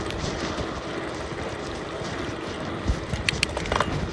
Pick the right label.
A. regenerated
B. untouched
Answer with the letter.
A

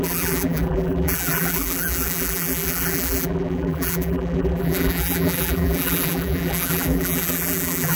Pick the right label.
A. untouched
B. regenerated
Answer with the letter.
B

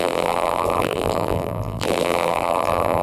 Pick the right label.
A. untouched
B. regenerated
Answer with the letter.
B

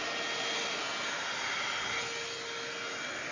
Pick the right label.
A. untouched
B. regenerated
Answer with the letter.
A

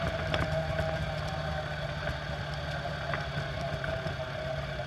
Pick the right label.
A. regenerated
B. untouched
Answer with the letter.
B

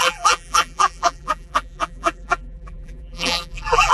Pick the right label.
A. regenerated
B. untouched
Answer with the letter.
A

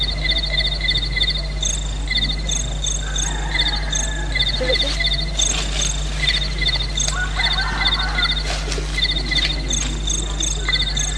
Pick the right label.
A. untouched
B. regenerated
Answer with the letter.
A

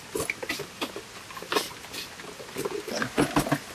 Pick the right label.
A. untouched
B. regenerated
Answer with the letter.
A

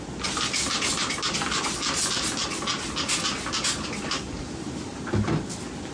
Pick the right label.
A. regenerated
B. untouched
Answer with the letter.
B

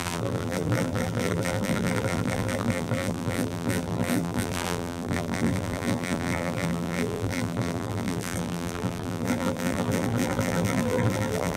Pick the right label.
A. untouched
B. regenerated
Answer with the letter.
B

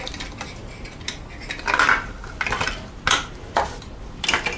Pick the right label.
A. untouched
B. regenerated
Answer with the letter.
A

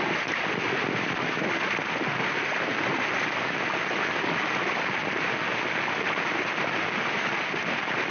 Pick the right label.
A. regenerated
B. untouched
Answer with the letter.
B